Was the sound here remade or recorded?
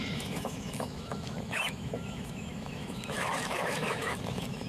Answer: remade